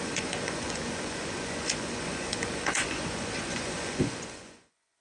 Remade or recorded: remade